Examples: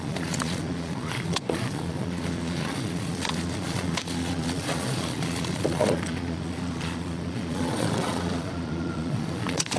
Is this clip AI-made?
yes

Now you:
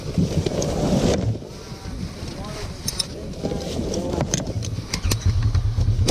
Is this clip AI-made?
no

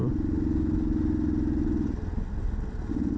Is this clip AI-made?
no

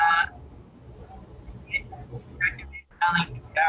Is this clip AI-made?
no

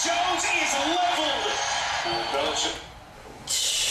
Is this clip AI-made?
no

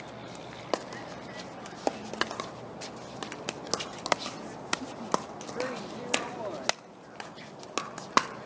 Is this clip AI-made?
no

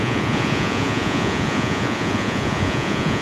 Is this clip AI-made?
yes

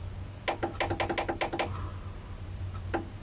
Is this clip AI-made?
no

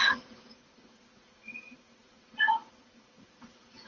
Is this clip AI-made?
yes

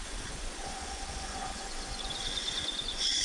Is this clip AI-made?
yes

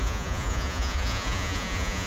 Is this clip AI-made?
yes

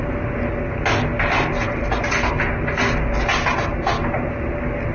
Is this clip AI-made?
no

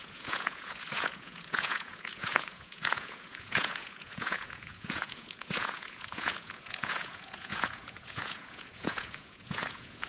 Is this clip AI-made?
yes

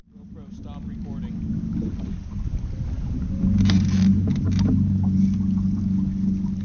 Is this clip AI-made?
no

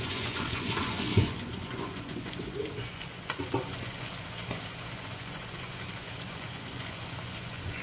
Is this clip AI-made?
yes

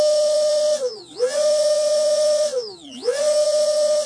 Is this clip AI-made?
yes